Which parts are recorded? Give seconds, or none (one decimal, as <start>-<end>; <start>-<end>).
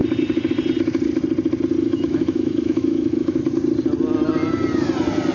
0.0-1.8; 3.4-5.3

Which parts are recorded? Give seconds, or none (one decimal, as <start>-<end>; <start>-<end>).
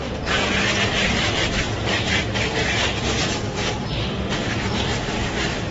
0.0-4.0; 4.5-5.7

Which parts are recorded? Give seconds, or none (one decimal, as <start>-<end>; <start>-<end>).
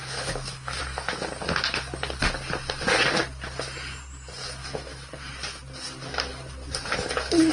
0.8-4.6; 5.3-7.5